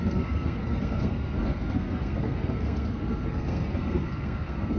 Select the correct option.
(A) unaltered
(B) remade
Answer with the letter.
B